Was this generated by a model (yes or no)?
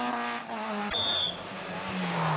no